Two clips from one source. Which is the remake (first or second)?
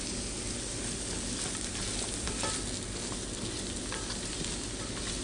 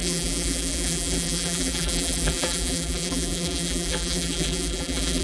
second